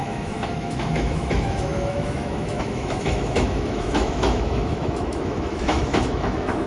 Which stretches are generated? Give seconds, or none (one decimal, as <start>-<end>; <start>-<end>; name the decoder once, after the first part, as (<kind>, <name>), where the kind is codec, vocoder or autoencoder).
0.0-6.7 (autoencoder, DAC-VAE)